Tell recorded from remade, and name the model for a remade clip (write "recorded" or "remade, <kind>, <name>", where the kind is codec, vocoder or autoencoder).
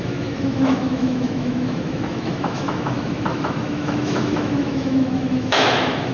remade, autoencoder, DAC-VAE